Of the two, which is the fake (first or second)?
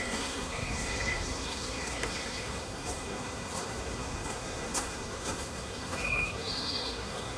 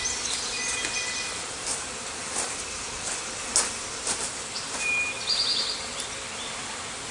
first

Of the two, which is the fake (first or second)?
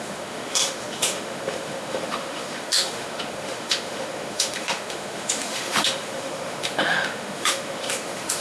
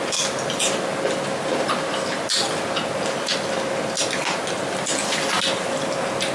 first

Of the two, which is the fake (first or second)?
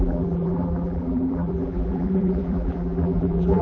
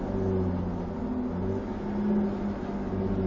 first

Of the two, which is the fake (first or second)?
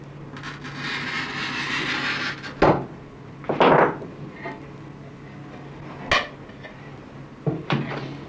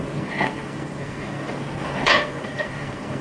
second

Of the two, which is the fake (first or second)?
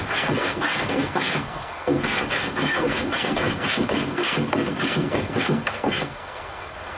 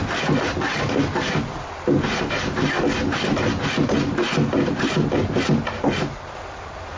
first